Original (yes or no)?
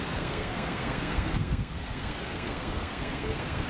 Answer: no